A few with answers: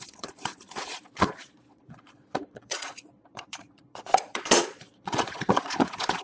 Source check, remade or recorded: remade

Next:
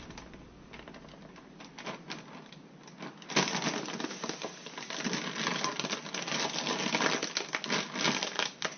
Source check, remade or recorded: recorded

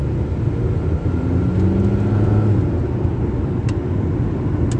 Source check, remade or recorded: recorded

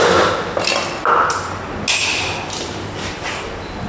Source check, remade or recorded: recorded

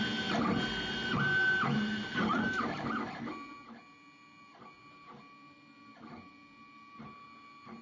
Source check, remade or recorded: recorded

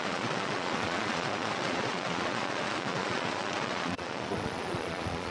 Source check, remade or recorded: remade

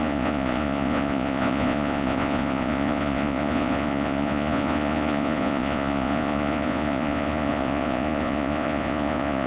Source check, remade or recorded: remade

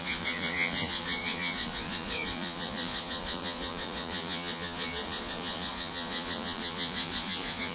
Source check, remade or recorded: remade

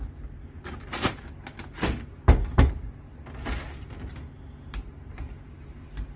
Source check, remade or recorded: recorded